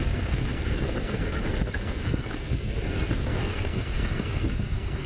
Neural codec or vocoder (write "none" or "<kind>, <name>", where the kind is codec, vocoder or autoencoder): codec, SNAC